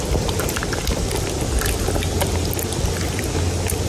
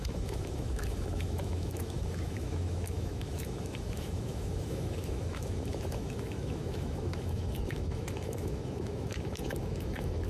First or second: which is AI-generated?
second